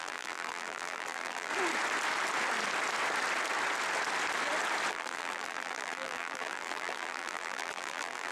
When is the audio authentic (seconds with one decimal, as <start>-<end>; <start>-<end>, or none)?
1.5-4.9